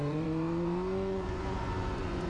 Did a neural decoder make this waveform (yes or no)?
yes